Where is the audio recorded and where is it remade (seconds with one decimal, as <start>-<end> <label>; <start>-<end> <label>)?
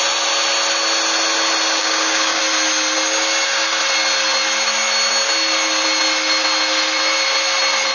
0.0-1.8 recorded; 1.8-2.4 remade; 2.4-7.9 recorded